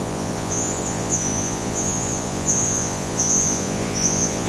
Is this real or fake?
fake